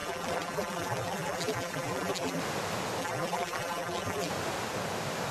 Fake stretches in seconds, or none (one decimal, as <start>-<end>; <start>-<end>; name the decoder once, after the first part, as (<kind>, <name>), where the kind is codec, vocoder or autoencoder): 0.0-2.4 (vocoder, BigVGAN v2); 3.0-4.3